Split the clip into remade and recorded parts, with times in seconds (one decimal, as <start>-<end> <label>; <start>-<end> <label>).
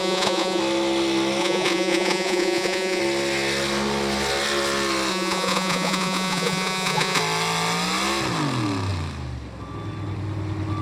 0.0-0.6 remade; 0.6-1.4 recorded; 1.4-3.0 remade; 3.0-5.1 recorded; 5.1-7.2 remade; 7.2-10.8 recorded